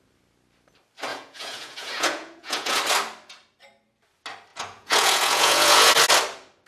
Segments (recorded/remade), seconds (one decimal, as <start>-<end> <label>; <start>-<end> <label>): 0.0-1.1 recorded; 1.1-2.8 remade; 2.8-4.5 recorded; 4.5-5.9 remade; 5.9-6.7 recorded

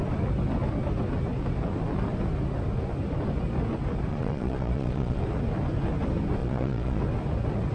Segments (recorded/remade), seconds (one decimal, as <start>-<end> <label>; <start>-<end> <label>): 0.0-4.1 recorded; 4.1-5.2 remade; 5.2-6.4 recorded; 6.4-7.0 remade; 7.0-7.7 recorded